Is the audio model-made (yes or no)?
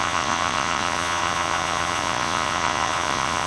yes